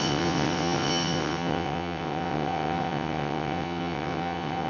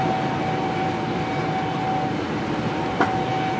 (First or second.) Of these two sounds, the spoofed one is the first